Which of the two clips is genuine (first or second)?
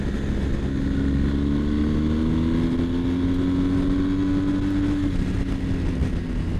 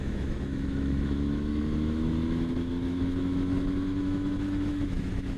first